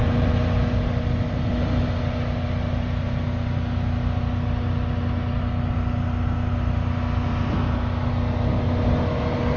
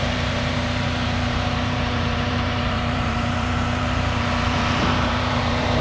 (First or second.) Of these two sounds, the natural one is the first